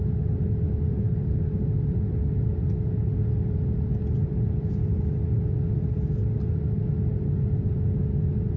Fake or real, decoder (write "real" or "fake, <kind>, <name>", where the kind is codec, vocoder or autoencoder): real